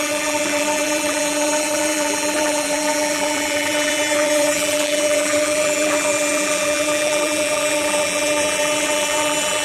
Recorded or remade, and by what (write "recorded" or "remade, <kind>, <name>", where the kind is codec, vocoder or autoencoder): remade, vocoder, BigVGAN v2